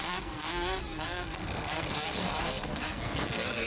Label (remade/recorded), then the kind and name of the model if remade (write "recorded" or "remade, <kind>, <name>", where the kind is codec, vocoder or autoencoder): remade, codec, SNAC